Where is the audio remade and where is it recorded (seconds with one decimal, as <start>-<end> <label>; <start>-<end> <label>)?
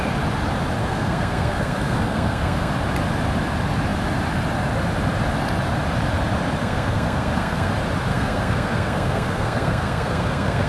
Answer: 0.0-0.8 recorded; 0.8-2.7 remade; 2.7-6.6 recorded; 6.6-7.7 remade; 7.7-8.1 recorded; 8.1-10.7 remade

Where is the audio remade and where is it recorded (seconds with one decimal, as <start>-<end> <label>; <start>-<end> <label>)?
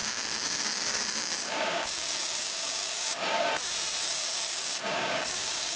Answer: 0.0-3.5 remade; 3.5-4.0 recorded; 4.0-5.8 remade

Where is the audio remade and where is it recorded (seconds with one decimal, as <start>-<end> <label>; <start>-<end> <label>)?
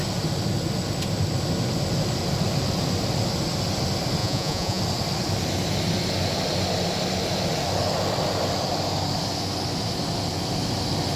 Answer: 0.0-4.2 recorded; 4.2-4.8 remade; 4.8-11.2 recorded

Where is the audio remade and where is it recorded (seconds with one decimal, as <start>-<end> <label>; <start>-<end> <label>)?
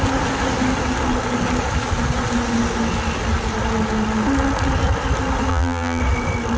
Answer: 0.0-5.5 recorded; 5.5-6.0 remade; 6.0-6.6 recorded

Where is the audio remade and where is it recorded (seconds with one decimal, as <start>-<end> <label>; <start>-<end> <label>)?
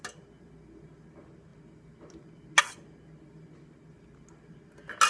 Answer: 0.0-5.1 recorded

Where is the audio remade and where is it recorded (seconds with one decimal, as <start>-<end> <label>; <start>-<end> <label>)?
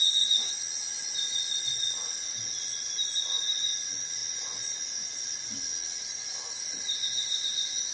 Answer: 0.0-7.9 recorded